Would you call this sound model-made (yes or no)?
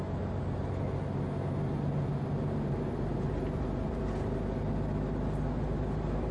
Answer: no